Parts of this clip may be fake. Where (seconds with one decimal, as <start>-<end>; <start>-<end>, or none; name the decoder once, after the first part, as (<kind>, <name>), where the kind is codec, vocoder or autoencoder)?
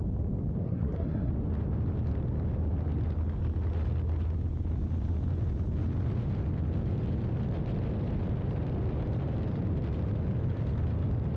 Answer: 0.6-1.3 (codec, SNAC)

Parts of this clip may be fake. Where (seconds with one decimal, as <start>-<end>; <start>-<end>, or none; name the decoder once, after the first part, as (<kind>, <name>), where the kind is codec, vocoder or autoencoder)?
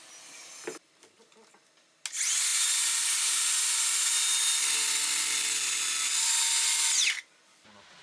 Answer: none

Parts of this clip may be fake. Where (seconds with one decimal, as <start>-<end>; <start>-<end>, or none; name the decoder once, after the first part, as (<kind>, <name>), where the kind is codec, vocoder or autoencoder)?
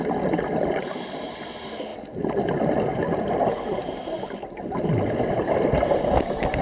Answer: 1.9-2.5 (vocoder, BigVGAN v2); 3.1-5.6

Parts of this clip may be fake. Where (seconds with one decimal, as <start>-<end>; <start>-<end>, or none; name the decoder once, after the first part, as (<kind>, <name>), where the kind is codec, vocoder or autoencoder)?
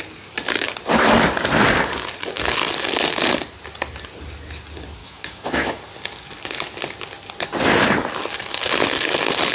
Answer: 5.0-5.8 (autoencoder, DAC-VAE)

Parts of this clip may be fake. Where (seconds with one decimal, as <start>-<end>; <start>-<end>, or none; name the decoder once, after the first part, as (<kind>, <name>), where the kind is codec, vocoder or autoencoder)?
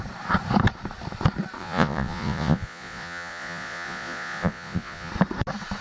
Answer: 1.6-5.1 (vocoder, Vocos)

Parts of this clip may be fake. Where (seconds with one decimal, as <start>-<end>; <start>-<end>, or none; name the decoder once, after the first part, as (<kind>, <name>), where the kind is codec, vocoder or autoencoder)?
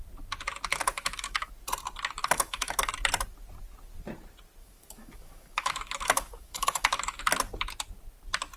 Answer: 0.7-1.5 (autoencoder, DAC-VAE); 2.2-2.9; 4.6-7.2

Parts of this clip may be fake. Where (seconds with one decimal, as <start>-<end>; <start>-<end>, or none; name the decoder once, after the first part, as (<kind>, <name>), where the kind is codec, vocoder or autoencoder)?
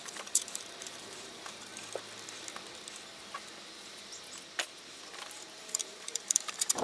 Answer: 0.0-1.7 (vocoder, BigVGAN v2); 5.6-6.8